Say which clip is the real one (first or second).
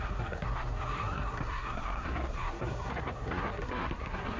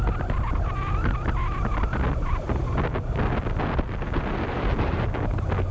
second